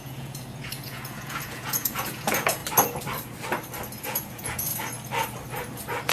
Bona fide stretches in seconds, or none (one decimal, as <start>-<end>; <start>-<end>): 2.6-4.0; 4.7-6.1